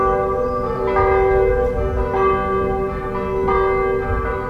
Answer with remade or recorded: recorded